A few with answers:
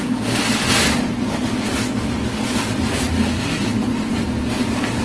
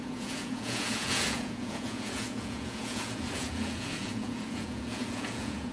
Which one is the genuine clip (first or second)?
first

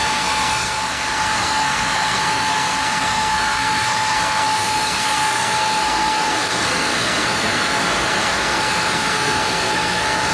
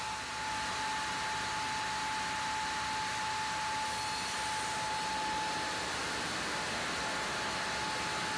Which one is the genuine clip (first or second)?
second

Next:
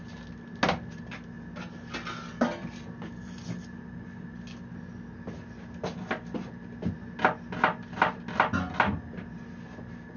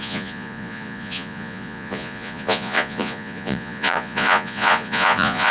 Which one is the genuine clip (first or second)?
first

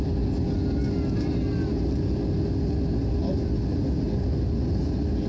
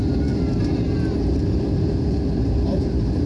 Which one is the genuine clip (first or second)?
first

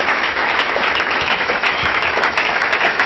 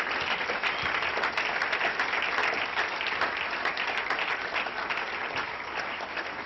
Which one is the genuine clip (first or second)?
second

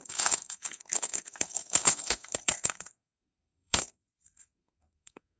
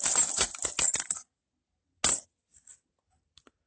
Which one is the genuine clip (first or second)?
second